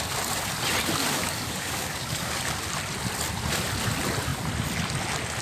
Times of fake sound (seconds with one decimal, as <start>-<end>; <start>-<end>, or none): 1.0-2.4